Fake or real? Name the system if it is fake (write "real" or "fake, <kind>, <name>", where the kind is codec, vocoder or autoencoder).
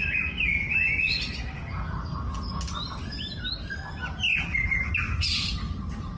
real